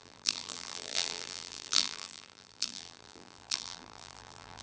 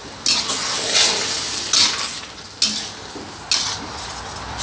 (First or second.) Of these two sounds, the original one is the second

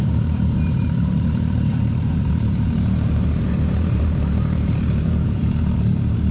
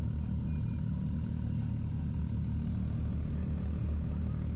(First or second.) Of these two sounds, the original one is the second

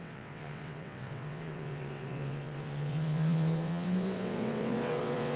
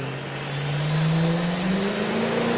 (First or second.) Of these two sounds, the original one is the second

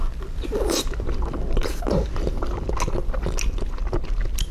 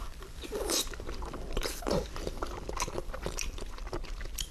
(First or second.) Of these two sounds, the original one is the first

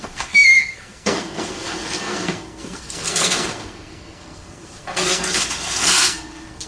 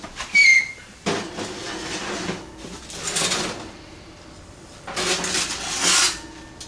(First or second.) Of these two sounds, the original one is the second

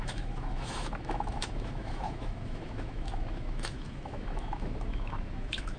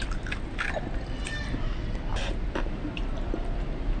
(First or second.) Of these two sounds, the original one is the second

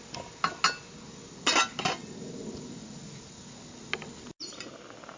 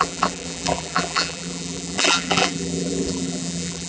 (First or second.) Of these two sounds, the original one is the first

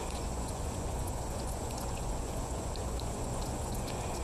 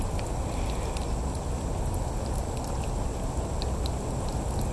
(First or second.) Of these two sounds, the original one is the second